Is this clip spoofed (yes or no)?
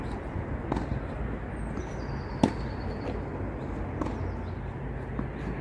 no